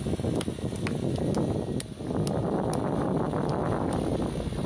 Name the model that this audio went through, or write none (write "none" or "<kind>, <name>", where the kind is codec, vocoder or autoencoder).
none